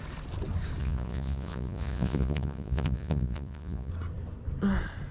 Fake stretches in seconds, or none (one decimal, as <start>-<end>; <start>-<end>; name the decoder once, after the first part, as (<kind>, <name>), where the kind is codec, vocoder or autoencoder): 0.8-3.9 (vocoder, Vocos)